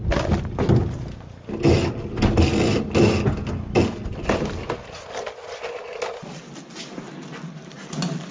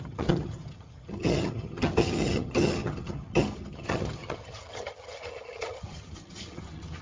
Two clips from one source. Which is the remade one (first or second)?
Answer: second